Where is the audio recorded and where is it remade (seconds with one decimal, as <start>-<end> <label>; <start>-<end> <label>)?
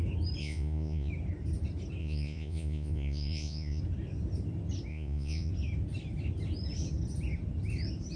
0.0-0.4 recorded; 0.4-1.1 remade; 1.1-2.0 recorded; 2.0-3.8 remade; 3.8-4.9 recorded; 4.9-5.5 remade; 5.5-8.2 recorded